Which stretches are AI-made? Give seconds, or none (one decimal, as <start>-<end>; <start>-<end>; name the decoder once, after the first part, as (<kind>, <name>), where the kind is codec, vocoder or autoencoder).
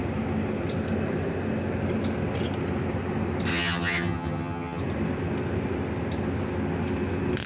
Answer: 3.5-4.8 (vocoder, HiFi-GAN)